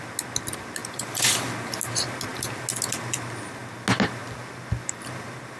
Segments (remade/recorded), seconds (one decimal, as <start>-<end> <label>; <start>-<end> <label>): 0.0-0.8 recorded; 0.8-1.3 remade; 1.3-5.6 recorded